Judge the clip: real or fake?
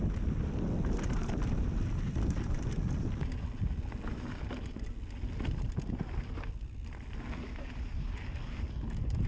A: real